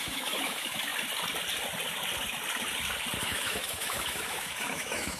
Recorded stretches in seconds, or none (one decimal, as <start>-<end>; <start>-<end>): 0.9-3.2

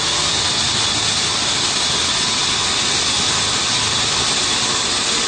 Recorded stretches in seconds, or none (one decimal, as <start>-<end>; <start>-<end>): 0.0-5.3

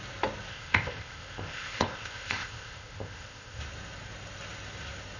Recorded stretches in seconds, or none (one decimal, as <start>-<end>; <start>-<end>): 0.0-0.5; 3.6-5.2

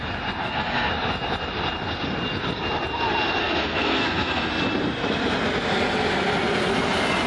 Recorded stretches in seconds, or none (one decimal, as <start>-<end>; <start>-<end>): 0.0-0.4; 0.9-3.4; 4.5-7.3

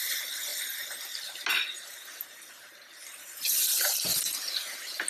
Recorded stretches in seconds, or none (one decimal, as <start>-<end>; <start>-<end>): 0.5-3.6; 4.1-5.1

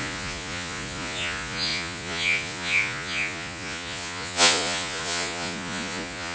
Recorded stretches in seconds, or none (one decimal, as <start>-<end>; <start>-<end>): none

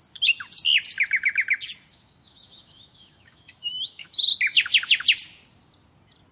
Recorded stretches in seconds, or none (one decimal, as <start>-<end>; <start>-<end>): 0.0-1.9; 4.3-6.3

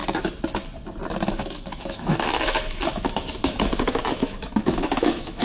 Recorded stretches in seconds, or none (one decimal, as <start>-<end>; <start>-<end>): 0.0-1.3